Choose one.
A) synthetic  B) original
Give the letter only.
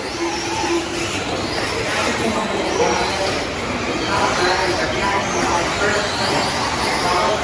B